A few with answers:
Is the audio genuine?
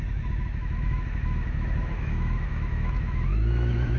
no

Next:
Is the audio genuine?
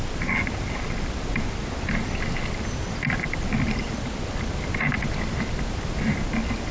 yes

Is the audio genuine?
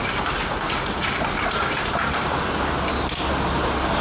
yes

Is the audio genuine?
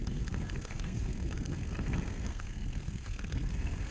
no